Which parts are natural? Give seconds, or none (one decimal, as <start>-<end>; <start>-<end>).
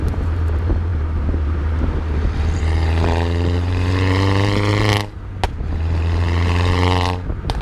4.7-5.5